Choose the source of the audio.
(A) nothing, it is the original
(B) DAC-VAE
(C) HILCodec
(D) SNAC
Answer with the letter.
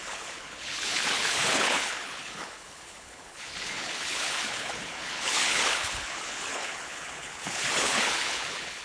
C